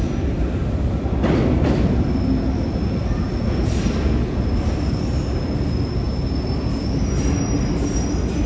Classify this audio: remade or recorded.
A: recorded